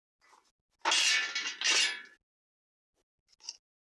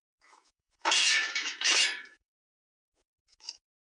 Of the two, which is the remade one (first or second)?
second